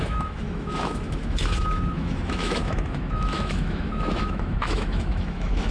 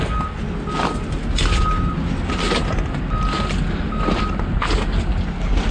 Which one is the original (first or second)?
second